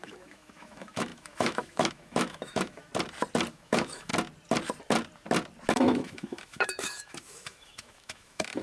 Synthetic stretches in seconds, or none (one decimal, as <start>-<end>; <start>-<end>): 0.0-2.9; 3.5-4.1; 5.7-8.6